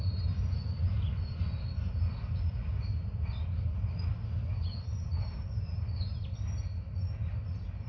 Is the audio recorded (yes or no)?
yes